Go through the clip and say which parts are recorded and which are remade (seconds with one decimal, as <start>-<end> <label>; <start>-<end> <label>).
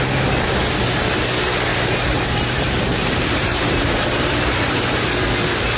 0.0-1.7 recorded; 1.7-5.2 remade; 5.2-5.8 recorded